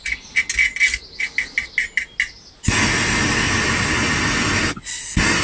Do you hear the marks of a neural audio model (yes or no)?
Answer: no